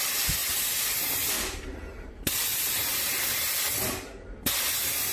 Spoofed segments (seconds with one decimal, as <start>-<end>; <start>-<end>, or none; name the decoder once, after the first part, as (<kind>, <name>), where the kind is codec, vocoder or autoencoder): none